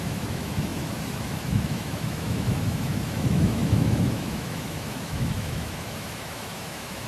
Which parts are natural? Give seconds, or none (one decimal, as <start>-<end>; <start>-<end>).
none